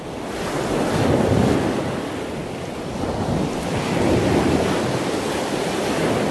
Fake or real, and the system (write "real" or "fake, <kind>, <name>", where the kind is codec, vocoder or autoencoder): real